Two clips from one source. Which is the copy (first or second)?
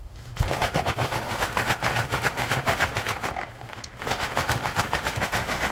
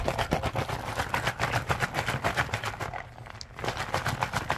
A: first